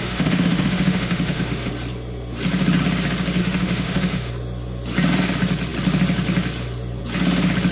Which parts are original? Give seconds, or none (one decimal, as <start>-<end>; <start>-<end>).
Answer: 1.7-3.4; 4.3-7.7